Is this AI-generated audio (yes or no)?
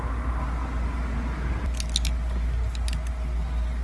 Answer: no